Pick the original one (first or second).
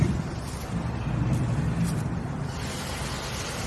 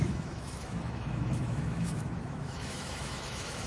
first